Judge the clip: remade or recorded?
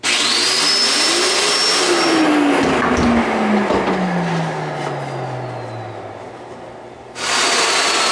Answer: recorded